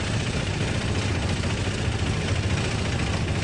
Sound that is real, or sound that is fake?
real